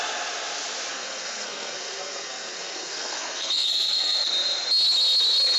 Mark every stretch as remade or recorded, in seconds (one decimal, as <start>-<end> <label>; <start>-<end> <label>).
0.0-0.9 recorded; 0.9-4.3 remade; 4.3-5.6 recorded